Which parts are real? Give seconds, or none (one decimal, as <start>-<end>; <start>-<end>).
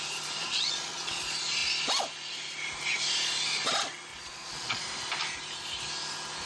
0.0-0.4; 1.2-4.1; 4.8-6.5